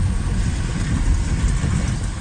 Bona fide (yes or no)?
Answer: yes